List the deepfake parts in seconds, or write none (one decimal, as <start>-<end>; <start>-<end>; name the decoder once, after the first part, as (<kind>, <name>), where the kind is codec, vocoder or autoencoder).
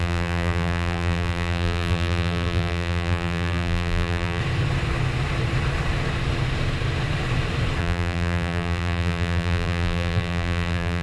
0.0-4.4 (vocoder, BigVGAN v2); 7.8-11.0